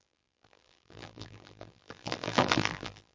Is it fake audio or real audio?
fake